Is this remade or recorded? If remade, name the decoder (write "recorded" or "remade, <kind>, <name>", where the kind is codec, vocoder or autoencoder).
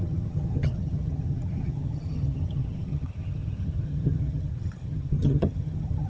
remade, vocoder, HiFi-GAN